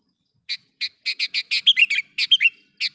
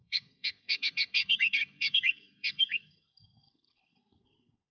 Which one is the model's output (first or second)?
second